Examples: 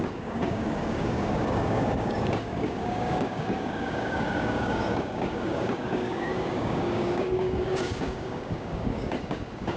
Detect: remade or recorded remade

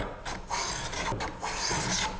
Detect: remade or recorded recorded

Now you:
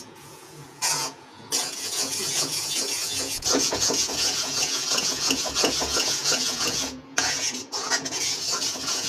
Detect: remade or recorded remade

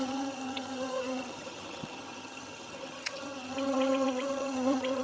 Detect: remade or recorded remade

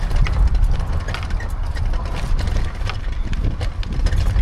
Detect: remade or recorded recorded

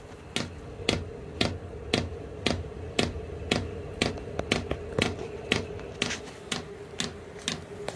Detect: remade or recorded recorded